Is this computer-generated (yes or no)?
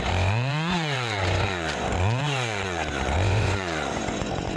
yes